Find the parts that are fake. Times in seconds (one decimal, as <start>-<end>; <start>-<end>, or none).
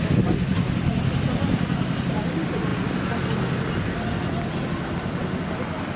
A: none